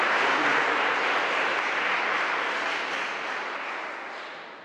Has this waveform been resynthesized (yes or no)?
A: no